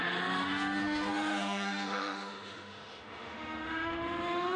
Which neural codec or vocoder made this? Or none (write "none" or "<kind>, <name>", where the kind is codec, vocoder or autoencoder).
autoencoder, DAC-VAE